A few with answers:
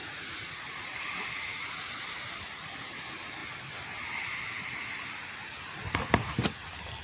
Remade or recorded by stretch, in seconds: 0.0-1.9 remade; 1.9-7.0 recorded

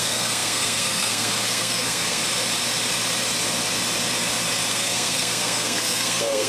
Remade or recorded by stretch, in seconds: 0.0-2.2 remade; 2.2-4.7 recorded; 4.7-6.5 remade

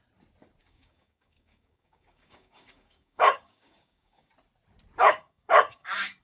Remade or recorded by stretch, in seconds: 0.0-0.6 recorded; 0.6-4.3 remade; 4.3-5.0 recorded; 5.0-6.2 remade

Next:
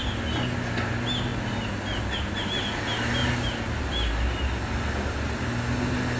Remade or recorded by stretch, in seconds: 0.0-6.2 recorded